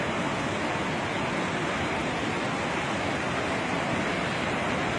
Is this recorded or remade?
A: recorded